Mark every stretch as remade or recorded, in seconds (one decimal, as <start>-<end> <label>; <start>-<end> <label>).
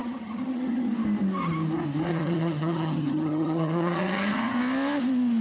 0.0-0.9 remade; 0.9-2.1 recorded; 2.1-4.6 remade; 4.6-5.4 recorded